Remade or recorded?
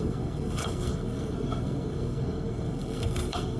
remade